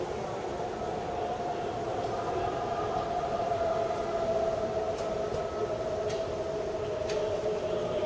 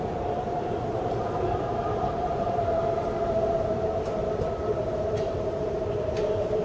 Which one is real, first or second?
first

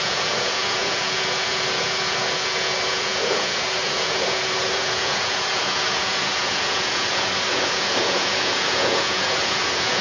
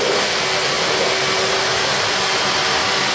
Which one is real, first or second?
second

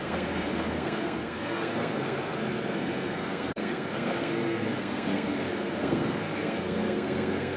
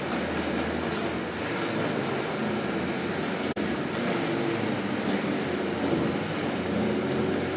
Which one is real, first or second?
second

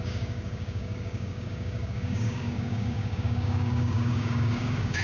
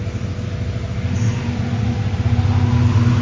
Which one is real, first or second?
second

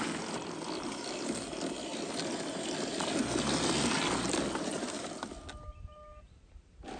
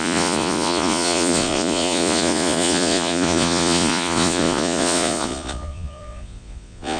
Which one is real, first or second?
first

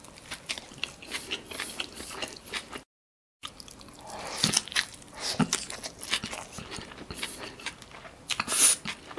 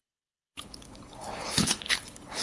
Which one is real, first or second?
first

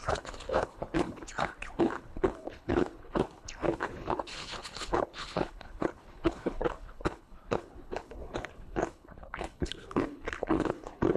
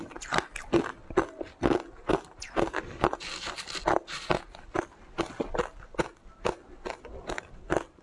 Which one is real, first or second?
second